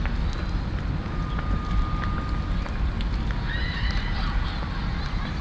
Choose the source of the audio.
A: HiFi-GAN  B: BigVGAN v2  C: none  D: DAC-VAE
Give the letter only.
C